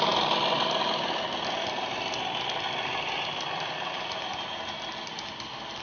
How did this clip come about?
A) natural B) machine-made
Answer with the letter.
A